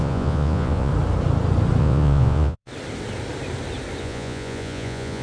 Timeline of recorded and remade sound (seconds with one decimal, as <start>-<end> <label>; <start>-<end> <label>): 0.0-0.9 remade; 0.9-1.8 recorded; 1.8-2.7 remade; 2.7-4.0 recorded; 4.0-5.2 remade